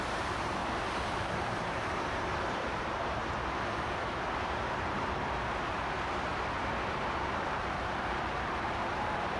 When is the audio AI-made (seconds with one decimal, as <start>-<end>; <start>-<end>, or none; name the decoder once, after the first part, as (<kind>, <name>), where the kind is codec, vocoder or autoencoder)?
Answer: 0.0-0.6 (vocoder, BigVGAN v2); 1.1-3.2; 4.8-6.3; 7.2-9.4